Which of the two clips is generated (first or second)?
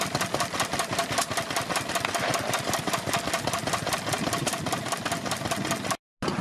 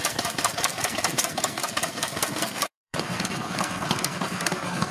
second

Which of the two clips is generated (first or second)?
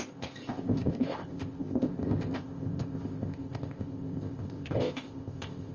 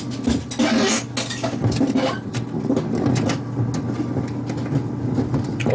first